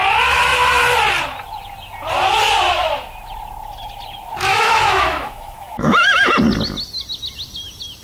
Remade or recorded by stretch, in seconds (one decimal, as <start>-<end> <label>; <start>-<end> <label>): 0.0-4.5 recorded; 4.5-6.3 remade; 6.3-8.0 recorded